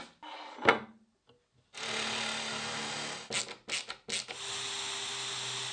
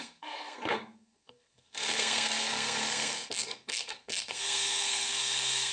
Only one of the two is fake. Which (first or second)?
second